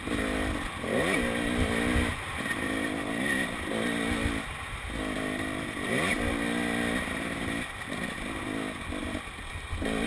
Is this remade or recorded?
recorded